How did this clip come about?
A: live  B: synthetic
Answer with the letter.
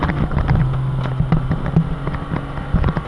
A